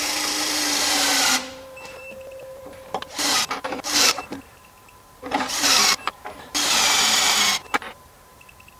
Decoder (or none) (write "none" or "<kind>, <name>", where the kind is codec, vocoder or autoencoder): vocoder, BigVGAN v2